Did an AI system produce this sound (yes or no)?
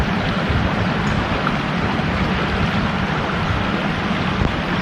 no